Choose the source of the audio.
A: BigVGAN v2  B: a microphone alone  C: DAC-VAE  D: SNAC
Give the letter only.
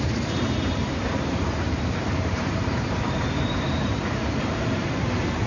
A